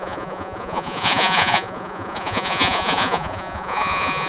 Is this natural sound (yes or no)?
no